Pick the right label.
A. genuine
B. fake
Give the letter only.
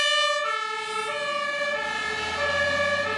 A